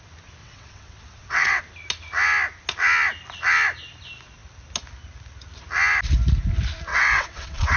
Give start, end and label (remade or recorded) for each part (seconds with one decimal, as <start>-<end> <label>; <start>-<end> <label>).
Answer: 0.0-0.4 recorded; 0.4-1.6 remade; 1.6-6.9 recorded; 6.9-7.8 remade